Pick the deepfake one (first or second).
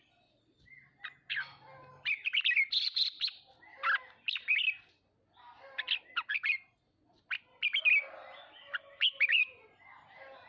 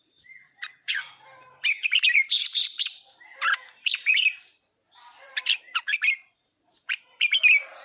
second